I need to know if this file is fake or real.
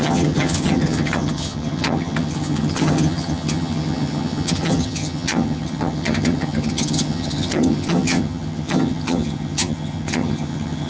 fake